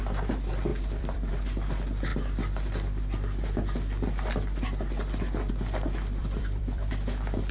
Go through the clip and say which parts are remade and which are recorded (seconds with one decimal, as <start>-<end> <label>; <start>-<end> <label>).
0.0-0.7 recorded; 0.7-1.3 remade; 1.3-6.2 recorded; 6.2-6.9 remade; 6.9-7.5 recorded